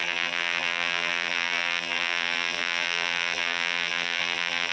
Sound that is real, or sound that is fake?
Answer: fake